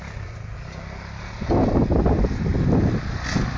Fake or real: real